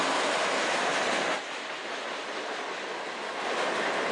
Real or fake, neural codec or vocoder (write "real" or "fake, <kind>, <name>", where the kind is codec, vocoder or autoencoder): real